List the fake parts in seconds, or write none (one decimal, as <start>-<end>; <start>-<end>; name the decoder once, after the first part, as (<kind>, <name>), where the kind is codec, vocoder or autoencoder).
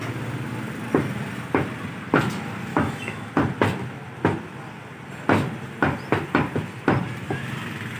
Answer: 2.7-3.3 (autoencoder, DAC-VAE)